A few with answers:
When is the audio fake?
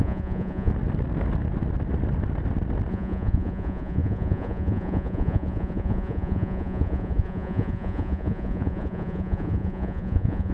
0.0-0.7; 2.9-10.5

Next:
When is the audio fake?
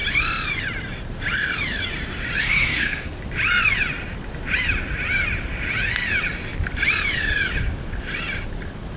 2.4-3.2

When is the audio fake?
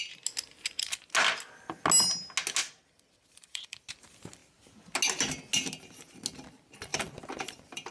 2.6-3.9; 6.9-7.9